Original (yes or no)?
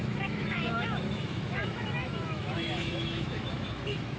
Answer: no